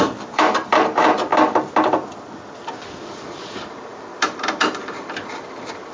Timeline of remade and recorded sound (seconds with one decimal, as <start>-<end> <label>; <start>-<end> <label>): 0.0-1.3 remade; 1.3-2.9 recorded; 2.9-5.9 remade